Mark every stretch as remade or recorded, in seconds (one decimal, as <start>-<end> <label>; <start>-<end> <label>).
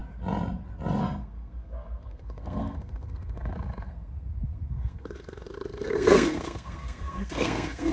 0.0-1.0 recorded; 1.0-7.9 remade